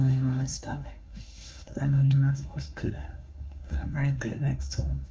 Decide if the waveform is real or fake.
fake